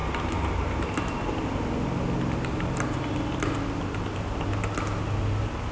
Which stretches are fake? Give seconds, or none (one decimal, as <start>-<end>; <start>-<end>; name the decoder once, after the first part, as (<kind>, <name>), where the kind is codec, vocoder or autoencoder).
0.0-1.1 (vocoder, BigVGAN v2)